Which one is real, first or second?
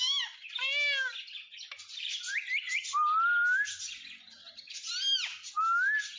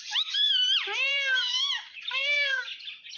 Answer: first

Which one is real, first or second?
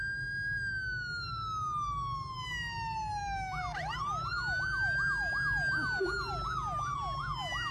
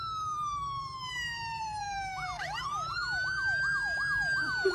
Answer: first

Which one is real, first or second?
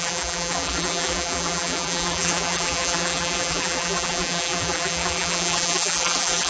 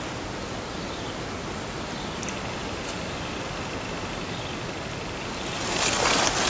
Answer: second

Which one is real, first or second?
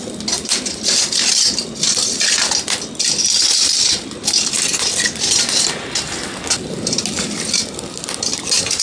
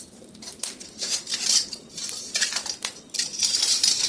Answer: first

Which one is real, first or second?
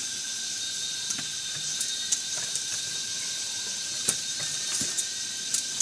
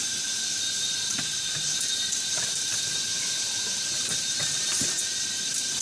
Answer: first